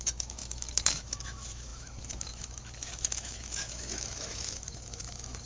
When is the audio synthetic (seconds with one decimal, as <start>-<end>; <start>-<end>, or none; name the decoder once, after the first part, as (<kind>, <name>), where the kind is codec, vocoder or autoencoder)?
0.0-5.5 (autoencoder, DAC-VAE)